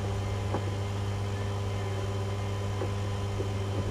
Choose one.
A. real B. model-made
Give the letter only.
A